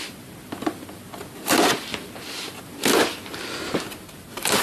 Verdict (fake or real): fake